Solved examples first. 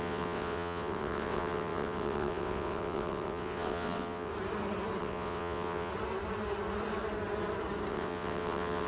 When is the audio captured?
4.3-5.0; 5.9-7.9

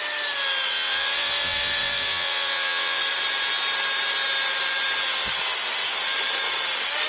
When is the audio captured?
0.0-0.7; 3.0-7.1

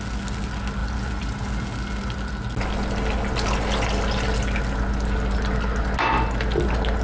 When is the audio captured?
0.0-7.0

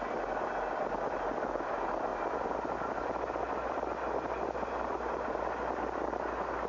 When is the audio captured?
0.0-6.7

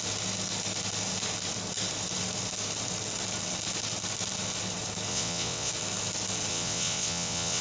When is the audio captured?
0.0-5.1; 5.7-6.5

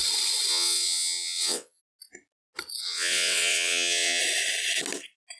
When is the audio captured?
0.0-0.5; 1.8-2.8; 4.2-5.4

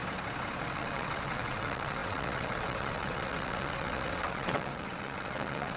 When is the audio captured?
0.0-0.6